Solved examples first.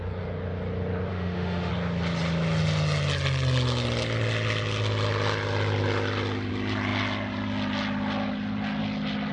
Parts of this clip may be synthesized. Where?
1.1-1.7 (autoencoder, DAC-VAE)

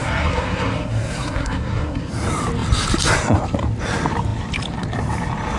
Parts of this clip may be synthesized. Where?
0.0-2.1 (codec, SNAC)

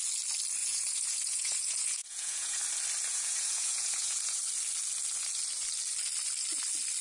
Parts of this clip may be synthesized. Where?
0.6-2.6 (vocoder, Vocos); 3.1-4.4

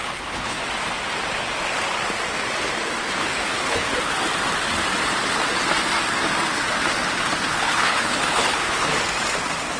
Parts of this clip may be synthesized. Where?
0.0-0.6 (codec, HILCodec); 3.2-4.0; 7.5-8.9

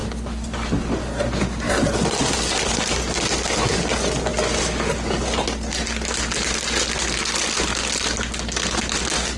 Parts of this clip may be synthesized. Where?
none

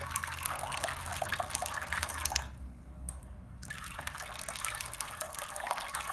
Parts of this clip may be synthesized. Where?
0.0-6.1 (codec, SNAC)

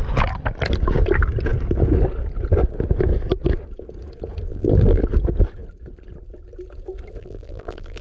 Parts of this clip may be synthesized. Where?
4.5-5.0 (vocoder, BigVGAN v2); 7.2-8.0